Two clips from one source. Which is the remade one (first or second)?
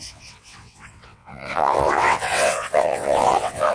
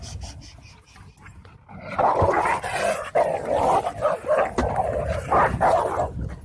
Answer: first